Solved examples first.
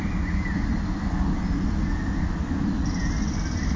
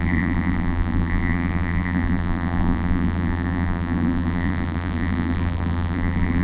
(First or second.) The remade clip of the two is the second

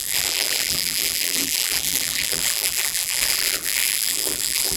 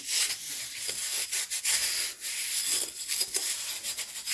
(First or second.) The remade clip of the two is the first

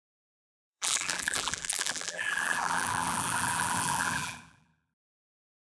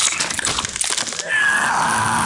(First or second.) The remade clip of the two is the first